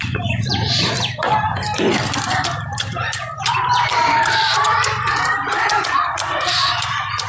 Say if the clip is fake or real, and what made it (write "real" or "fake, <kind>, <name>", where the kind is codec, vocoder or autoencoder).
fake, vocoder, BigVGAN v2